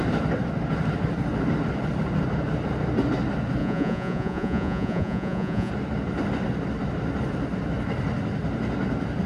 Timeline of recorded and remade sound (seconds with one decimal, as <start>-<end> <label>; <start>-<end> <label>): 0.0-3.6 recorded; 3.6-5.7 remade; 5.7-9.3 recorded